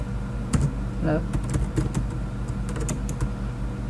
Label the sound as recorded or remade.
recorded